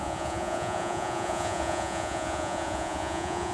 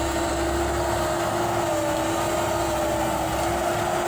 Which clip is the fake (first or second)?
first